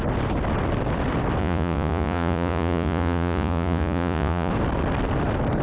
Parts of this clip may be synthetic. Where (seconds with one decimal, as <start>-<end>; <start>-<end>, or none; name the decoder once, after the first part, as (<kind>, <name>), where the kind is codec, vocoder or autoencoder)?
1.4-4.5 (vocoder, Vocos)